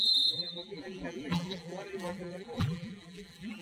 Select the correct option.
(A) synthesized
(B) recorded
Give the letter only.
A